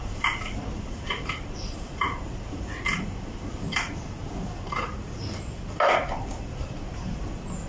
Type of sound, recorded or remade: remade